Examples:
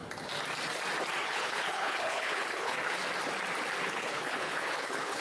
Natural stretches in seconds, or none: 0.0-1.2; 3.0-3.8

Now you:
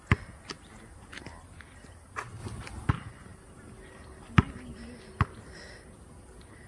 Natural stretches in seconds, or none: 0.0-6.7